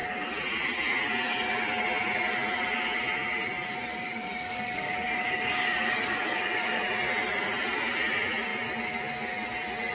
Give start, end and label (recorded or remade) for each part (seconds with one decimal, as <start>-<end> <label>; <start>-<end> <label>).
0.0-3.9 recorded; 3.9-6.8 remade; 6.8-9.9 recorded